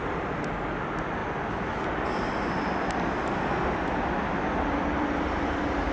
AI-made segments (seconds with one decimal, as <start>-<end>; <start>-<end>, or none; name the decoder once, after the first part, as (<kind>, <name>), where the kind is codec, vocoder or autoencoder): none

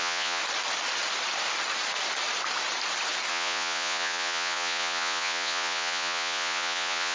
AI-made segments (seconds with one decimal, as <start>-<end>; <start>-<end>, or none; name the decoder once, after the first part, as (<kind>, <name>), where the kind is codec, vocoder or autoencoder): 0.0-0.4 (vocoder, Vocos); 3.3-7.1

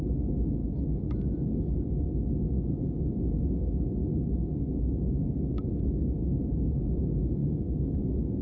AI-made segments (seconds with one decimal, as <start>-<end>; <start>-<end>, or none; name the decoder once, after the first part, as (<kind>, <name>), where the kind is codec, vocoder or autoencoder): 0.6-2.0 (autoencoder, DAC-VAE); 7.4-8.0

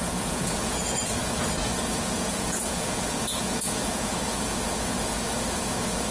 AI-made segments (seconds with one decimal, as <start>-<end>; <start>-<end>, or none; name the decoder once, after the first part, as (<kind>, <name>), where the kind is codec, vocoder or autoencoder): 0.0-6.1 (vocoder, Vocos)

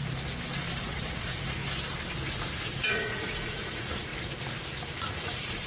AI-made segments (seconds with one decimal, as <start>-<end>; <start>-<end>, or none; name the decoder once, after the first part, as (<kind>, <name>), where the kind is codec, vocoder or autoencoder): 0.8-1.6 (vocoder, Vocos); 2.6-4.1; 5.0-5.7

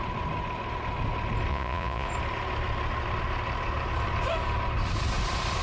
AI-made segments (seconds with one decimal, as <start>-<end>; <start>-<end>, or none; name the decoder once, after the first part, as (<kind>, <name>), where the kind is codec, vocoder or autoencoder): 1.5-2.1 (vocoder, Vocos)

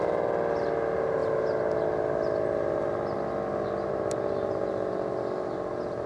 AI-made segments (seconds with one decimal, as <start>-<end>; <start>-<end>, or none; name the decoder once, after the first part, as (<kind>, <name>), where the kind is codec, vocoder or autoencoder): none

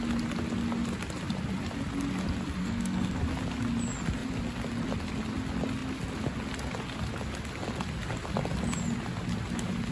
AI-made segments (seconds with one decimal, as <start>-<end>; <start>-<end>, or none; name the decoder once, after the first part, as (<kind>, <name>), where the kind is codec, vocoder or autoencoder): 2.6-3.2 (codec, SNAC)